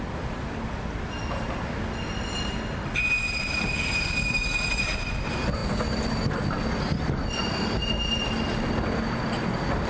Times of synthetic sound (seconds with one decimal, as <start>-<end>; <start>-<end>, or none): none